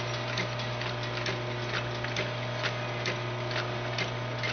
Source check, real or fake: real